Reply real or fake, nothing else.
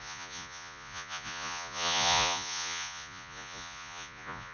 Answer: fake